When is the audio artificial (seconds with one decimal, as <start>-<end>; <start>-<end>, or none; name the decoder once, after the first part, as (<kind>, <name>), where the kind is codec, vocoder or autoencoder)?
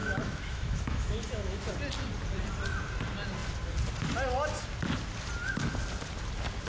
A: 0.0-1.7 (autoencoder, DAC-VAE)